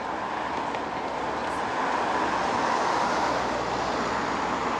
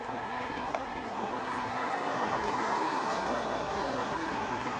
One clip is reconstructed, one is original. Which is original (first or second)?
first